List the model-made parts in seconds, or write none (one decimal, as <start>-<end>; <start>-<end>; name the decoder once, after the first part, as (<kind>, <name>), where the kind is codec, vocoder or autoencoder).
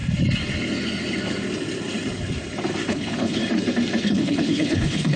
2.9-3.4 (codec, HILCodec); 4.0-5.2